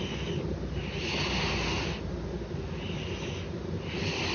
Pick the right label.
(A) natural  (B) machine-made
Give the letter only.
A